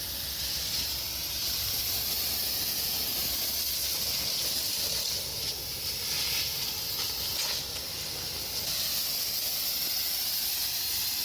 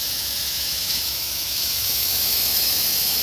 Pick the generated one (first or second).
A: second